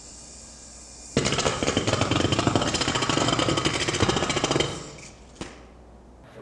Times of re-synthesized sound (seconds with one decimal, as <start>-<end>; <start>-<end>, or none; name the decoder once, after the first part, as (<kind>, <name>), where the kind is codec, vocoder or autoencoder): 1.5-3.4 (vocoder, BigVGAN v2)